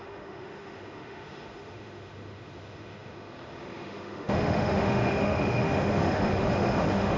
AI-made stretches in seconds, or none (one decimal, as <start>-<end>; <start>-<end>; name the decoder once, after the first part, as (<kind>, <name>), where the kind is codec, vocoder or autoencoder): 0.0-7.2 (autoencoder, DAC-VAE)